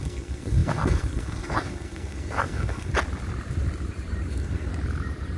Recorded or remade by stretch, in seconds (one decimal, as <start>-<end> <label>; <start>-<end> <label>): 0.0-2.9 remade; 2.9-4.3 recorded; 4.3-4.7 remade; 4.7-5.4 recorded